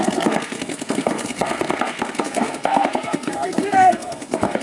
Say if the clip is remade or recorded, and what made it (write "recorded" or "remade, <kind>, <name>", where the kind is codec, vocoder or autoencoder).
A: remade, codec, SNAC